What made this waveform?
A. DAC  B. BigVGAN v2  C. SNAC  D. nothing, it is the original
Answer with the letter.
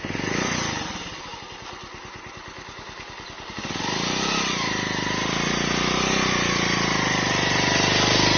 D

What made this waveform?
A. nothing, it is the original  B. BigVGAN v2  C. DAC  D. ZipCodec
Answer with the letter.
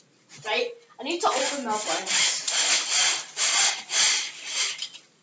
A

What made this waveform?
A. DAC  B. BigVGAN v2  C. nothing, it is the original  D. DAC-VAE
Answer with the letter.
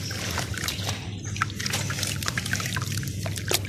C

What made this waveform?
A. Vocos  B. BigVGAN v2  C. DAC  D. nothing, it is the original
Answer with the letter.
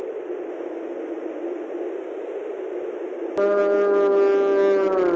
D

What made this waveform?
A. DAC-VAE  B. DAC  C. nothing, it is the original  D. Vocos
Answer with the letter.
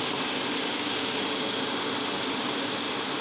C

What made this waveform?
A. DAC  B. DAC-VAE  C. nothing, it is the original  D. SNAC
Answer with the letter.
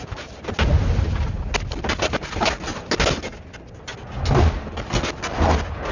C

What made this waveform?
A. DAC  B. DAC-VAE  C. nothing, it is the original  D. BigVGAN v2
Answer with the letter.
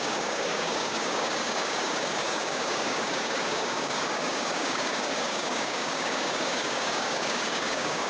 A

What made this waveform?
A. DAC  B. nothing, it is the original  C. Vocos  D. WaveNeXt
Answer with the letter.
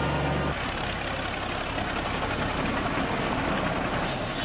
B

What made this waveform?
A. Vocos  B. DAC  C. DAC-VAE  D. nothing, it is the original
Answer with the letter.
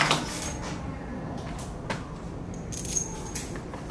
D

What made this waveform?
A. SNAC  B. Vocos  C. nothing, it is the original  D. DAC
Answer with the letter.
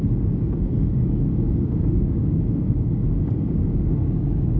D